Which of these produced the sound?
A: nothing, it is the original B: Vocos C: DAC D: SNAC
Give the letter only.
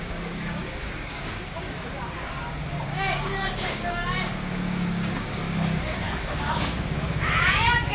C